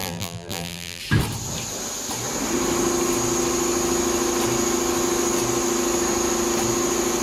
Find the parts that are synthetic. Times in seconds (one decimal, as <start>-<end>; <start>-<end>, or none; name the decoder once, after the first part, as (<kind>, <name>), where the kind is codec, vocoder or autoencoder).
0.0-1.0 (vocoder, BigVGAN v2)